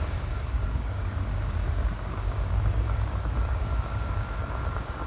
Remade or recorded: remade